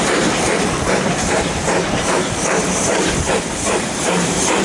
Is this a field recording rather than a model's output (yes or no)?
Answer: no